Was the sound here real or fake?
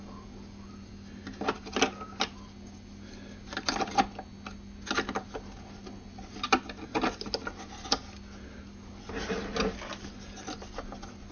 real